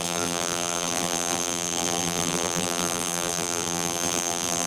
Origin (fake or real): fake